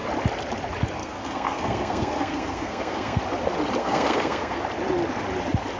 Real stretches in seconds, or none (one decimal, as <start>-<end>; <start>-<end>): 0.0-1.0; 3.2-3.8; 4.6-5.8